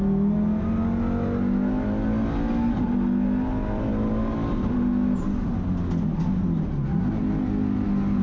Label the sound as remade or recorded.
recorded